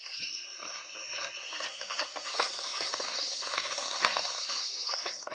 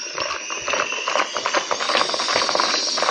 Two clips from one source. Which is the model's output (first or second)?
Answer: first